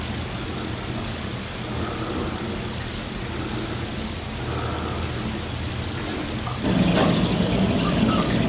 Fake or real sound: real